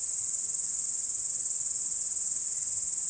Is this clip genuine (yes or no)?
yes